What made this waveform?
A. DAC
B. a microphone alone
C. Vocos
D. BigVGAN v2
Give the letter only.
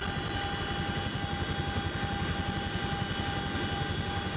B